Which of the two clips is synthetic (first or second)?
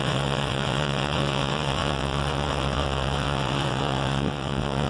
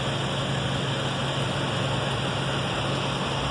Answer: first